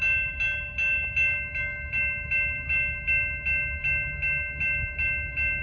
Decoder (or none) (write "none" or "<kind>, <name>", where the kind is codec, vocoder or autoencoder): none